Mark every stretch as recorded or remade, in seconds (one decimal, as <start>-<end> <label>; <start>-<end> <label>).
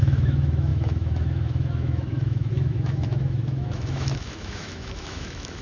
0.0-5.6 remade